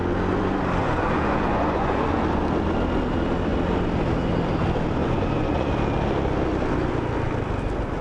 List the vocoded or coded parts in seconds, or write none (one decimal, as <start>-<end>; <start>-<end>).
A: 0.8-2.2; 5.0-5.7